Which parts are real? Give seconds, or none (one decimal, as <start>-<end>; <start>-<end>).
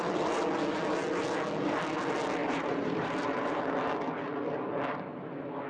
0.0-2.4; 3.6-5.7